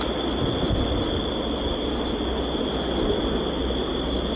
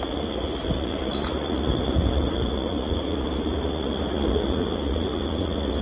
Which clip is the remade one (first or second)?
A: second